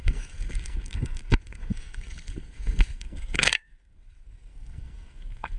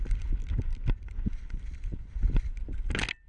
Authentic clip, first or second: second